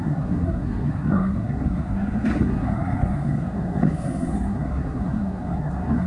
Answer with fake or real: fake